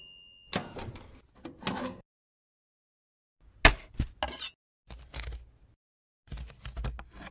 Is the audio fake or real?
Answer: real